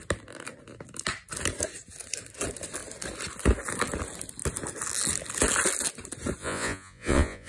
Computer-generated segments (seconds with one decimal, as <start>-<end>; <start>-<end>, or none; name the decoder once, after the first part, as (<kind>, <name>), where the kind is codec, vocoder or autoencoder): 6.4-7.5 (vocoder, Vocos)